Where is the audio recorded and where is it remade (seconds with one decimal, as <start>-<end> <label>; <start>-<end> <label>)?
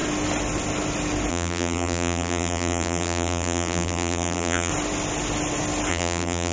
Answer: 0.0-1.3 recorded; 1.3-4.7 remade; 4.7-5.9 recorded; 5.9-6.5 remade